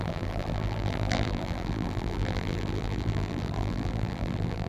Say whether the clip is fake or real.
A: fake